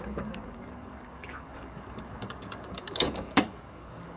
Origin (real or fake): fake